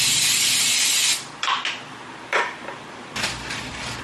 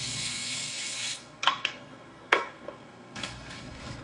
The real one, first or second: first